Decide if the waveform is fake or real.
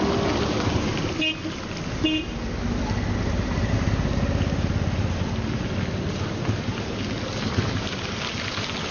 real